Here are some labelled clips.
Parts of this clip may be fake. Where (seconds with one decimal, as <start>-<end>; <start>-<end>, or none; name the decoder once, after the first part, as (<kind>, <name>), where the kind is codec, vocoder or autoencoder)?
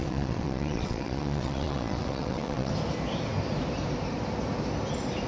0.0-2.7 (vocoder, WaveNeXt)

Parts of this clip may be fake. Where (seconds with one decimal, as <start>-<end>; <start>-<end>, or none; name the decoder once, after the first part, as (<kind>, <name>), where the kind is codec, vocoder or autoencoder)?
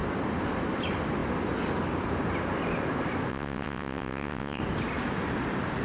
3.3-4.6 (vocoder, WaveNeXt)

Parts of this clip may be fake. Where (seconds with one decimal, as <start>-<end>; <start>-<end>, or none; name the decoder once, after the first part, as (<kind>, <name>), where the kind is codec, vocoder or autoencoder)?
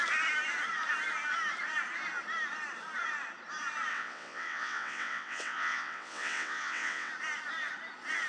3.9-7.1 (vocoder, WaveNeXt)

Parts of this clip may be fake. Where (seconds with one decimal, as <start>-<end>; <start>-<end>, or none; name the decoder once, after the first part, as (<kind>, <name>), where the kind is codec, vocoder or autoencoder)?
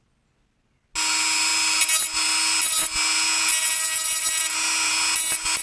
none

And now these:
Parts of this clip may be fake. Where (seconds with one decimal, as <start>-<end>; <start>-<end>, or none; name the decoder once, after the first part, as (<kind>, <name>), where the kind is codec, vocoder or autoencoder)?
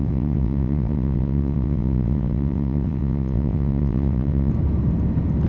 0.0-4.5 (vocoder, WaveNeXt)